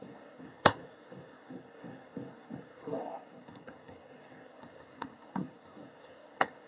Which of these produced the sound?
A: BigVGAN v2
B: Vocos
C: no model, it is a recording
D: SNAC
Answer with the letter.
D